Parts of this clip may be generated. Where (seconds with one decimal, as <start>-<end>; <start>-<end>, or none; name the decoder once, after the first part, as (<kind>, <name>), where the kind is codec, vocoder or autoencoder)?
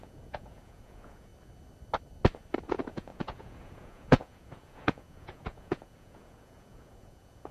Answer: 0.0-1.3 (vocoder, Vocos); 2.7-7.5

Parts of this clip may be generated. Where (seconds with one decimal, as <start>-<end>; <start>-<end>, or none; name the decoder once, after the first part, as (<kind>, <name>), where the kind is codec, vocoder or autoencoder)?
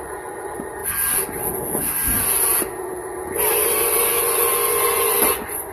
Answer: 0.0-0.8 (vocoder, Vocos); 4.2-5.7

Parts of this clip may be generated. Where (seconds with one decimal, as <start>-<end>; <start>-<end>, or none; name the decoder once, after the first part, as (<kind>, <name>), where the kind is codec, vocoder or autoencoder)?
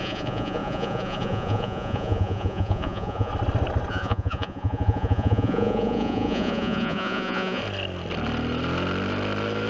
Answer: 0.0-3.3 (vocoder, Vocos); 3.9-7.6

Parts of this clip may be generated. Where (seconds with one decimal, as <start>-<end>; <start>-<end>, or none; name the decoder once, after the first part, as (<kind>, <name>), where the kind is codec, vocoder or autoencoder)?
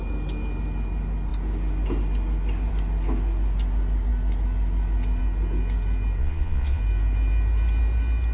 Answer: 6.2-6.8 (vocoder, Vocos)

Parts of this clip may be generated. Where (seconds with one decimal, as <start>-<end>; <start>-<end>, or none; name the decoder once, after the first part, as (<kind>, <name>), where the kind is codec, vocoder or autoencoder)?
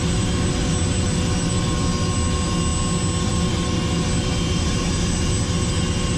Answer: none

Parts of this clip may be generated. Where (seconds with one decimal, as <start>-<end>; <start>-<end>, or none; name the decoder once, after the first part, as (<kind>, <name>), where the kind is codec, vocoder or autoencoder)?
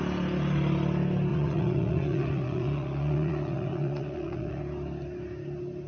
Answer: 1.3-4.6 (vocoder, Vocos)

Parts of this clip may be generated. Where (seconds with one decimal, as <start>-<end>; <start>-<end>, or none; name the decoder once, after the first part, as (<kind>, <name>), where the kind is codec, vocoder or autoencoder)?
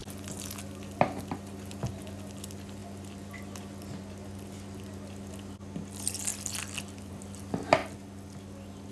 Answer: none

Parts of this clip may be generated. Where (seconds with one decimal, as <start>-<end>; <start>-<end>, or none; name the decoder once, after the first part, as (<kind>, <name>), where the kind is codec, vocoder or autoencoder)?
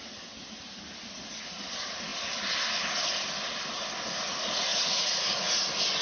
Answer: 4.7-5.6 (vocoder, Vocos)